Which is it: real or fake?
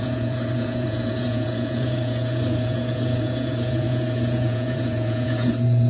fake